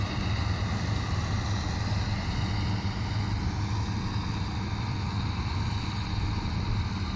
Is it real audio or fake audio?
real